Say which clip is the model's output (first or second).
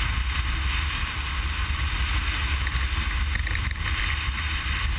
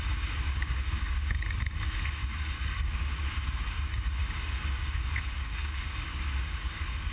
second